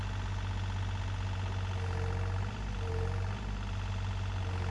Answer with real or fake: real